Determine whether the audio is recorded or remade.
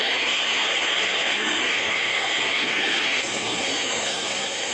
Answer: remade